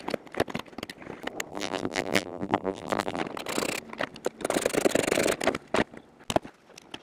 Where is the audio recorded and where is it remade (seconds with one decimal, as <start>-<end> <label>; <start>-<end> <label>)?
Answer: 0.0-1.5 recorded; 1.5-3.2 remade; 3.2-7.0 recorded